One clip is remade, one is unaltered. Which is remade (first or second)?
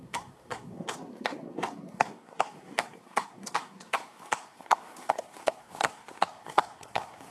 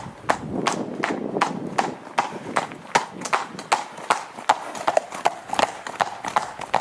first